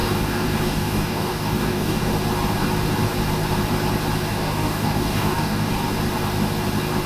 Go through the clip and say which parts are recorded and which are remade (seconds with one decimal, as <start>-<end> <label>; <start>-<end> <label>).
0.0-2.1 remade; 2.1-4.3 recorded; 4.3-5.7 remade; 5.7-7.1 recorded